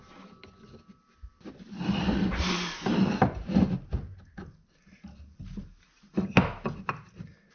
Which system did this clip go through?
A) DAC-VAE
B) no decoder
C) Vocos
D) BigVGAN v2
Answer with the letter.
B